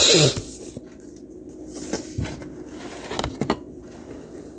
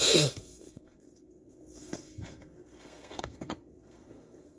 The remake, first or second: second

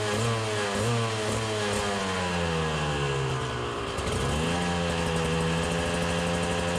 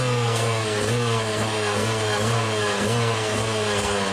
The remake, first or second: second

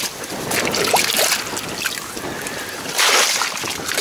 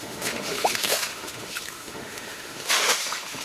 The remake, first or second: second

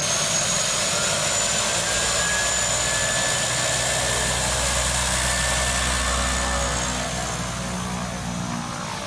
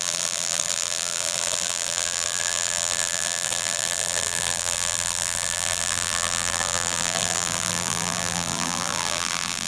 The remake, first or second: second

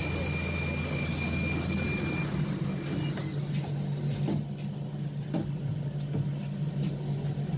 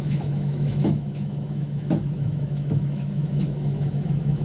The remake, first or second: second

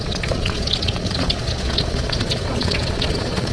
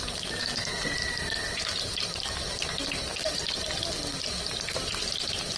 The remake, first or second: first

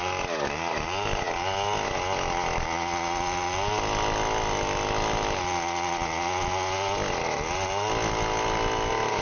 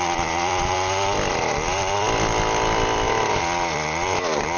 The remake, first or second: second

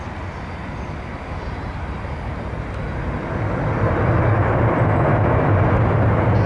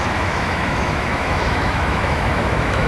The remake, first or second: second